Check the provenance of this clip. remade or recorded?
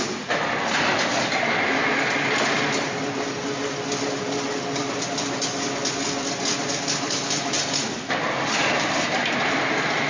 recorded